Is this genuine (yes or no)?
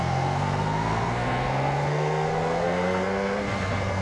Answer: no